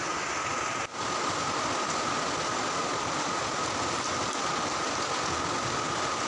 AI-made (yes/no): no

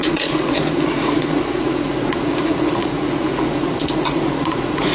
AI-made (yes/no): yes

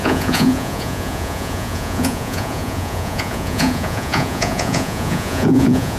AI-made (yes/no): yes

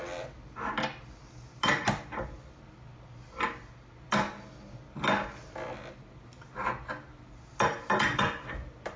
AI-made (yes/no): no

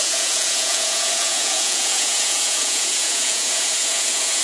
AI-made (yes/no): yes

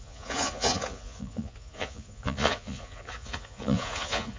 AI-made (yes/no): yes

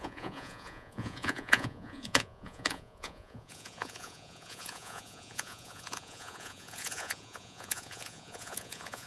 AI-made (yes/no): yes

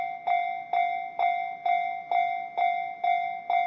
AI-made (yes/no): no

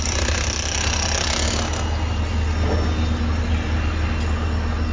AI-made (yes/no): no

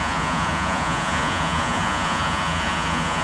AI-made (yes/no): yes